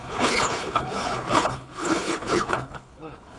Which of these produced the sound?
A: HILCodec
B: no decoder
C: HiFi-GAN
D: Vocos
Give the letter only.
A